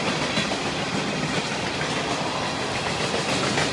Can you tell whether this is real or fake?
real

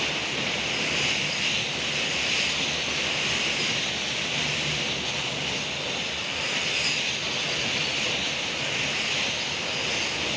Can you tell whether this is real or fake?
real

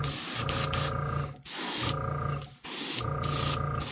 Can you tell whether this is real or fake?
real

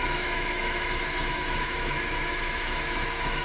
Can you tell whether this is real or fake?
fake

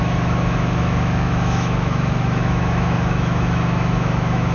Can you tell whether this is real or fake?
fake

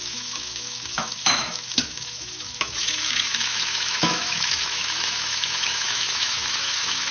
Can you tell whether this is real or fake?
fake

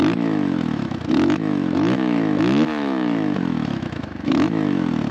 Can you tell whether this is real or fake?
fake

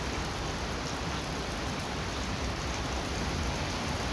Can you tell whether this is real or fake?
real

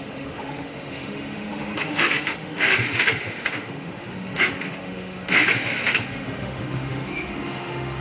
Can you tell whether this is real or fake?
fake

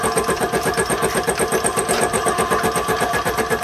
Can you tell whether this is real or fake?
real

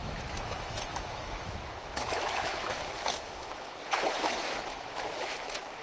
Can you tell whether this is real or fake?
fake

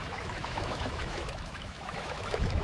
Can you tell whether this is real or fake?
fake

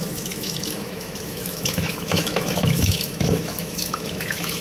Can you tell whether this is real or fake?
fake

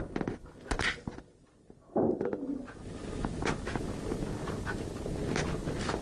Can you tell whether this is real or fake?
real